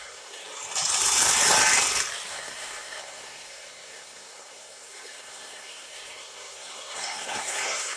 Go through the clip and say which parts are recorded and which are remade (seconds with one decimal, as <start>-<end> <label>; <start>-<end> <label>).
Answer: 0.0-0.4 remade; 0.4-2.3 recorded; 2.3-8.0 remade